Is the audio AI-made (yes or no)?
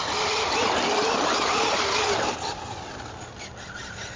no